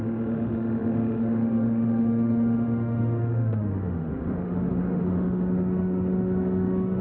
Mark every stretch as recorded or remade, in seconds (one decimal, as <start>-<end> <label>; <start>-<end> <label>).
0.0-7.0 remade